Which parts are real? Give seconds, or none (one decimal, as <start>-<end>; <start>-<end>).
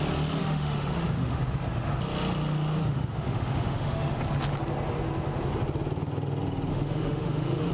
0.0-0.4; 1.4-2.8; 4.2-6.7